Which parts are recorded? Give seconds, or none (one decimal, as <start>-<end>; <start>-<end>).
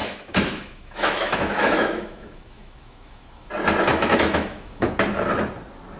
3.5-3.9; 4.9-6.0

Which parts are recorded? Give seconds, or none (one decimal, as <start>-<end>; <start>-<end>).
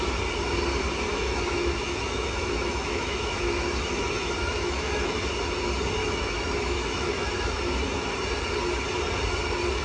0.0-1.1; 5.2-6.0; 7.6-9.8